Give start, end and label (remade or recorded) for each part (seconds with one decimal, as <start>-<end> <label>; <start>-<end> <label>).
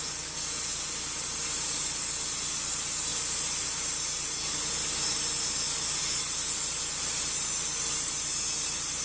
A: 0.0-9.0 recorded